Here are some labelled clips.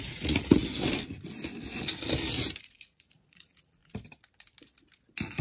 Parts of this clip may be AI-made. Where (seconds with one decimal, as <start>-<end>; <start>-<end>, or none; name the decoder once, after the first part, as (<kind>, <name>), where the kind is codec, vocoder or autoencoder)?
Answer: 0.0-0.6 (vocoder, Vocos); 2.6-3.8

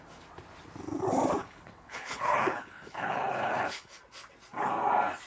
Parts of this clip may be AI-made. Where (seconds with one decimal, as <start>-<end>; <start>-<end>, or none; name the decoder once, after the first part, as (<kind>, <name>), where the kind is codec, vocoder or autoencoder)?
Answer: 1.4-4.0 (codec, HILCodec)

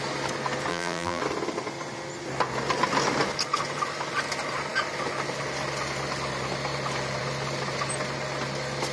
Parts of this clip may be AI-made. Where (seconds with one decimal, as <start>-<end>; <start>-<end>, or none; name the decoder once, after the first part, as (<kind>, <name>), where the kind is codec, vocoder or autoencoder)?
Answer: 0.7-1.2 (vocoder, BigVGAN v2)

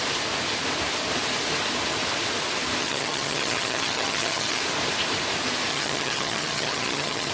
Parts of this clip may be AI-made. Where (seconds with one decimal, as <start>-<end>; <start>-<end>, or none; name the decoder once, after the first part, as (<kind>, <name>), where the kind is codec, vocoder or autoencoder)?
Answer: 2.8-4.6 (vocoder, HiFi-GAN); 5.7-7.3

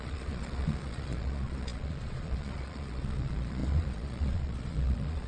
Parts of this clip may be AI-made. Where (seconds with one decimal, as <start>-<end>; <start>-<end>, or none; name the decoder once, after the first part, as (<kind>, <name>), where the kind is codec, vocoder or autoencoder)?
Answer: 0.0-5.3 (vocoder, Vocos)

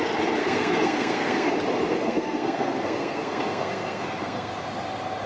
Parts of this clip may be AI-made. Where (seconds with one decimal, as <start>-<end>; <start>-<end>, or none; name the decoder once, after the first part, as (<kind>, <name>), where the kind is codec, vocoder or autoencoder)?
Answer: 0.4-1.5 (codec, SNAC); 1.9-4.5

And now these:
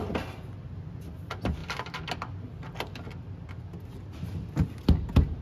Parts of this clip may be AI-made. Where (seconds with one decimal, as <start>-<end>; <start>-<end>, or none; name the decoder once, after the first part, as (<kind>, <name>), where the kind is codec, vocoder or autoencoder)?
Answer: none